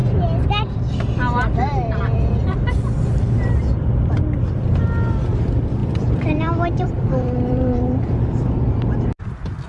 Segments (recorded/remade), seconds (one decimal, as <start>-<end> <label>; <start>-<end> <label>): 0.0-5.8 recorded; 5.8-8.5 remade; 8.5-9.7 recorded